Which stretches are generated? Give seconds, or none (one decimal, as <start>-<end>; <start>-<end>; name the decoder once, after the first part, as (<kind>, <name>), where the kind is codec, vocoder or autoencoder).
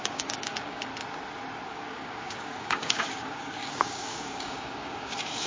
0.0-0.9 (codec, DAC); 1.7-5.5